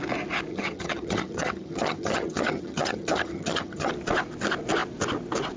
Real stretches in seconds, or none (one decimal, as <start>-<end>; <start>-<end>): 0.0-0.5; 3.9-5.6